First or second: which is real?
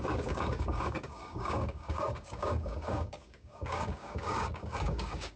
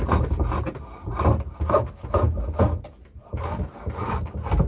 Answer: second